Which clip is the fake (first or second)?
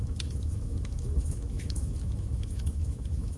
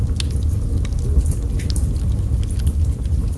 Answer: first